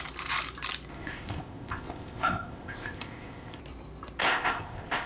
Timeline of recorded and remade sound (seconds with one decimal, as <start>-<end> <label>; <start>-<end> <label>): 0.0-0.9 recorded; 0.9-3.6 remade; 3.6-4.2 recorded; 4.2-5.1 remade